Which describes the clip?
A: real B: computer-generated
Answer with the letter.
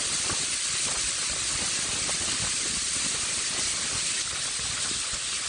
A